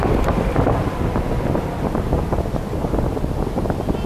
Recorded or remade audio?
recorded